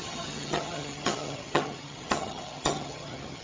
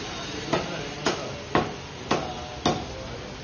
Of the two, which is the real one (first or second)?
second